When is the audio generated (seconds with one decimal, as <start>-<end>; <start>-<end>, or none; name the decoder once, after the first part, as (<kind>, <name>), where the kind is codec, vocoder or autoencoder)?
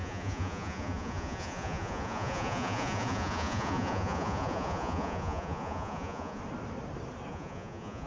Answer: 0.0-6.4 (vocoder, Vocos); 7.3-8.1